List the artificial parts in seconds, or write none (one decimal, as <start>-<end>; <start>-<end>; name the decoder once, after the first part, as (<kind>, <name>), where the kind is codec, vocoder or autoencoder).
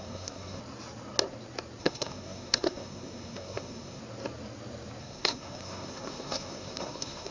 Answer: 0.0-0.6 (codec, SNAC); 1.8-4.0; 5.0-7.3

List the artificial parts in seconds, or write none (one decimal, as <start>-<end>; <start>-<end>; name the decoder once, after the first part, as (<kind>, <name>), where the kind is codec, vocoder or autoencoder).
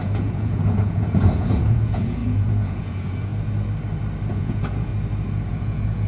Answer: 0.0-3.3 (vocoder, Vocos); 4.3-4.9; 5.5-6.1